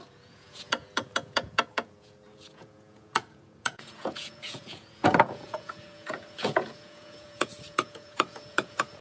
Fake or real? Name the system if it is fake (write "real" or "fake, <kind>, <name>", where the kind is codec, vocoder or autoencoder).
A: fake, vocoder, Vocos